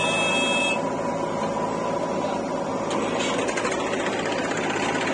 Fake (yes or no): no